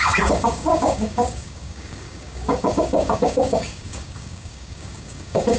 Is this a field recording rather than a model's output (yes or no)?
no